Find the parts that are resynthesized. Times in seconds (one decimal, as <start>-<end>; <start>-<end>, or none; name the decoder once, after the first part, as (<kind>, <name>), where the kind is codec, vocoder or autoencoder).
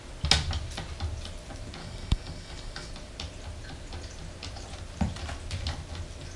1.8-2.9 (codec, DAC)